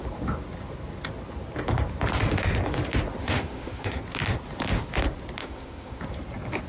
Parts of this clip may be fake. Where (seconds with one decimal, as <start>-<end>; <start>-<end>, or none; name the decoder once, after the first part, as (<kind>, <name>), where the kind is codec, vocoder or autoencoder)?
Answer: 3.2-4.0 (autoencoder, DAC-VAE); 5.4-6.0